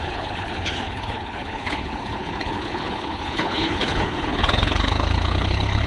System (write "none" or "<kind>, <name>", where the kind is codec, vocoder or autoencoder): codec, HILCodec